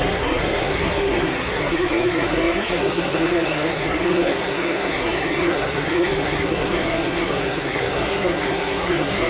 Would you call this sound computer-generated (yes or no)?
yes